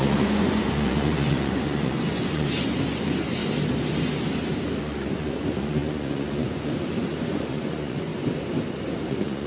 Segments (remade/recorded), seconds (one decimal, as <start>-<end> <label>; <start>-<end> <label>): 0.0-3.4 remade; 3.4-4.8 recorded; 4.8-8.1 remade; 8.1-9.1 recorded; 9.1-9.5 remade